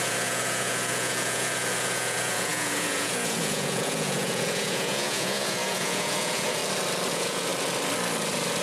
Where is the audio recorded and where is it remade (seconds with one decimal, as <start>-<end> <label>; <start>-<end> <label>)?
0.0-6.6 remade; 6.6-7.1 recorded; 7.1-7.5 remade; 7.5-8.6 recorded